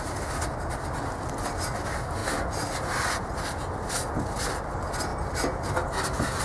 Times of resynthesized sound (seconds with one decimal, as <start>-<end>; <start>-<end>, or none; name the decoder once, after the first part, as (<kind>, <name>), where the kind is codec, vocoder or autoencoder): none